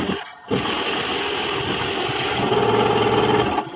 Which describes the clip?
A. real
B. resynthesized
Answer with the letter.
A